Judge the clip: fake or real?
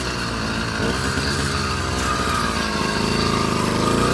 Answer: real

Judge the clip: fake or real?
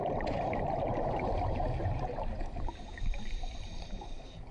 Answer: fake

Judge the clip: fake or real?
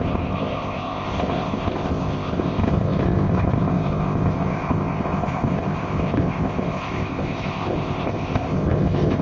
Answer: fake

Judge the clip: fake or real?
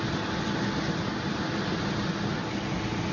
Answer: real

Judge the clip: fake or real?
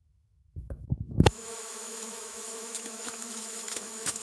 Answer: fake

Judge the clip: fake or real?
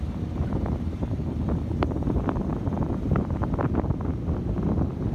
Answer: real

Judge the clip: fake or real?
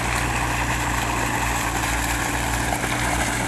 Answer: real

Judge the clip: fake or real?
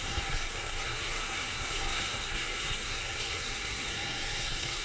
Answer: fake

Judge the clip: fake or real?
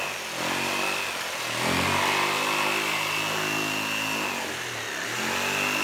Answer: real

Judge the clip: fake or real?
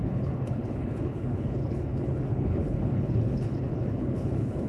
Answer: fake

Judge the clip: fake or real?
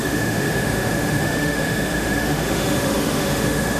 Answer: fake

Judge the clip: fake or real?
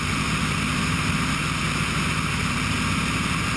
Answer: fake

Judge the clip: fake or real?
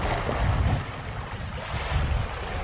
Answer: real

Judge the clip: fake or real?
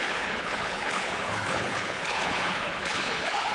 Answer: fake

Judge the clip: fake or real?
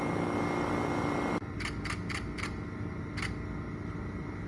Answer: real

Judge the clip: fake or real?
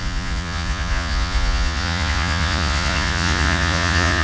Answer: fake